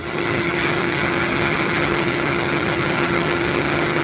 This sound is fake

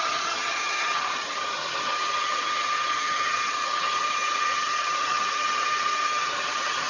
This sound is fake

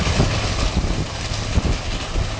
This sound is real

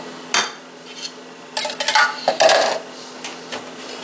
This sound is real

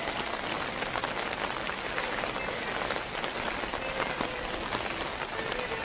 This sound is real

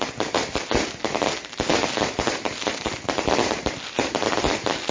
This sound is real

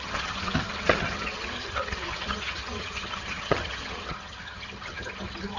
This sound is fake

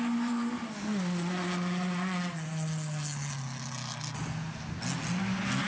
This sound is real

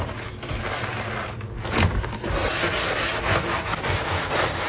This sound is real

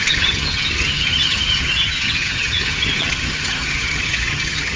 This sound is fake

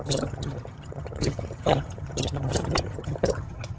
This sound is fake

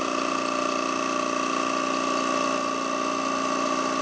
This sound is real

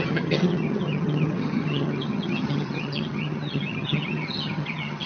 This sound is fake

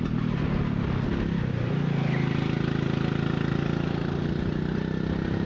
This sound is real